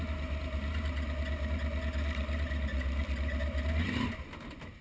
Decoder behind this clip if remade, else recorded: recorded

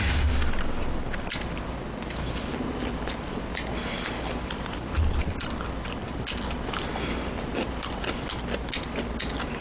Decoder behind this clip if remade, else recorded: recorded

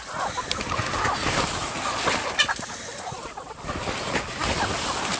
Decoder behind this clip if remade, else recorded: recorded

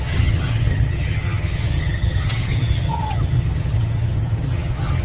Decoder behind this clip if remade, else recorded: remade, vocoder, HiFi-GAN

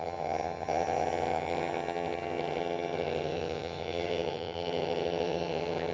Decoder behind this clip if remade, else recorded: remade, vocoder, HiFi-GAN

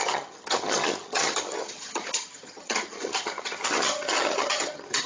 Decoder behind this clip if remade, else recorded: remade, vocoder, HiFi-GAN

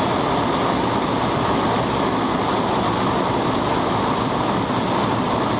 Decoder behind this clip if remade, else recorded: recorded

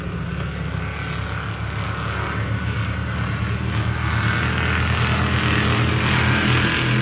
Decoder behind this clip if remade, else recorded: recorded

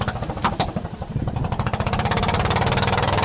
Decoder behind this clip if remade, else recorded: recorded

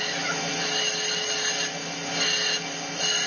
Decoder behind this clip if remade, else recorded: recorded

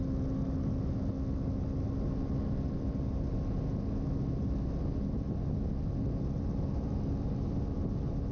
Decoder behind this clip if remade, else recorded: recorded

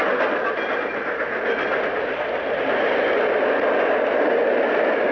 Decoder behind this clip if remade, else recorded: recorded